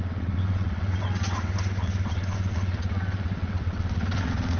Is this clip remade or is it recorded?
remade